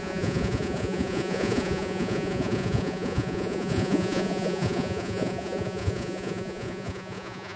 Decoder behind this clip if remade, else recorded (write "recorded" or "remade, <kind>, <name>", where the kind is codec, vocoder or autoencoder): remade, vocoder, Vocos